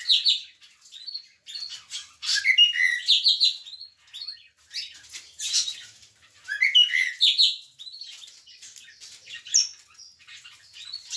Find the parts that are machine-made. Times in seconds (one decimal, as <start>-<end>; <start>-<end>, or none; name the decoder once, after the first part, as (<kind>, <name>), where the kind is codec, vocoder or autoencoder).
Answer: none